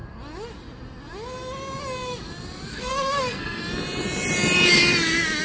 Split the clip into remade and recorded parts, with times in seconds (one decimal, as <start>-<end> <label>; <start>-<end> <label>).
0.0-2.7 recorded; 2.7-3.6 remade; 3.6-5.4 recorded